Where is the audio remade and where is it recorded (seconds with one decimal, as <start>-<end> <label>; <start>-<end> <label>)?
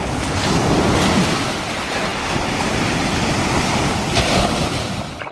0.0-5.3 recorded